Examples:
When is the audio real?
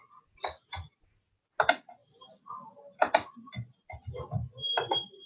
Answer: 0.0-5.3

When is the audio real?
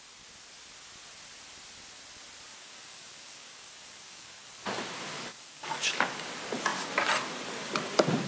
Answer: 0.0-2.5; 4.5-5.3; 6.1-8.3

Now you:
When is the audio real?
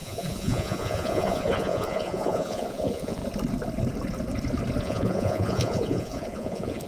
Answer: 3.2-4.8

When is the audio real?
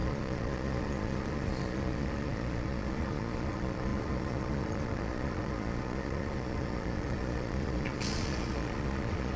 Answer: none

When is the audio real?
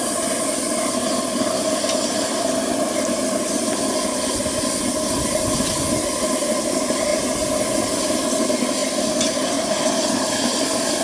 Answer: 0.0-11.0